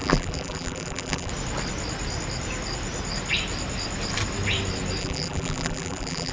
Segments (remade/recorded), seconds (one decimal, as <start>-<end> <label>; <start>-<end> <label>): 0.0-1.3 remade; 1.3-5.0 recorded; 5.0-6.3 remade

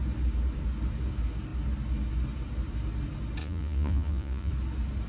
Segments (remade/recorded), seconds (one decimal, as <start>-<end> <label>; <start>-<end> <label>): 0.0-3.4 recorded; 3.4-4.5 remade; 4.5-5.1 recorded

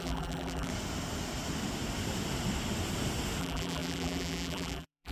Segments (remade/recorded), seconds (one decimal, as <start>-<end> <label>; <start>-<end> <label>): 0.0-0.7 remade; 0.7-3.4 recorded; 3.4-5.1 remade

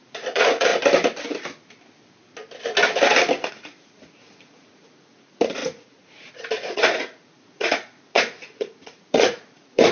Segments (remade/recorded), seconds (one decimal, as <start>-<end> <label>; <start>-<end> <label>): 0.0-0.7 remade; 0.7-3.5 recorded; 3.5-9.9 remade

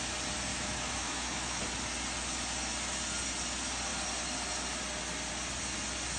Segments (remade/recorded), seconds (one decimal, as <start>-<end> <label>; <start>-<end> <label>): 0.0-0.5 recorded; 0.5-1.6 remade; 1.6-6.2 recorded